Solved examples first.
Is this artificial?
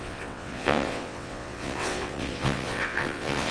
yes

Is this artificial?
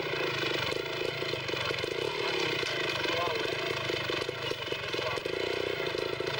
no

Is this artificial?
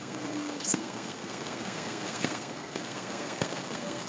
yes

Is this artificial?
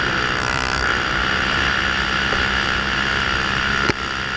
no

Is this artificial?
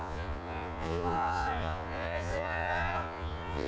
yes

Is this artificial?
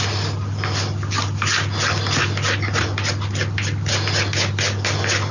no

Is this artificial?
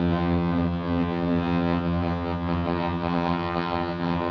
yes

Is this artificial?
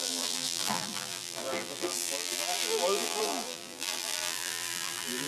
yes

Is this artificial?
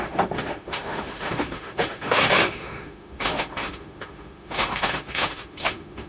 yes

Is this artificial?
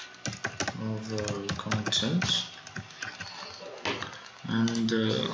no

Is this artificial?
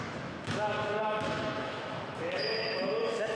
yes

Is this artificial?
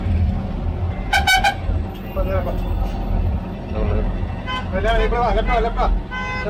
no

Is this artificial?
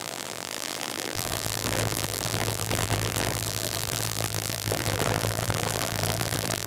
yes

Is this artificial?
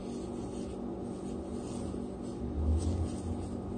no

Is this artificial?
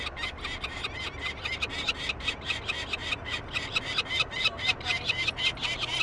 no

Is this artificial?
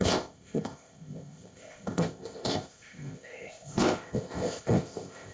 yes